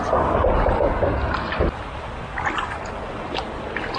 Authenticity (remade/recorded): recorded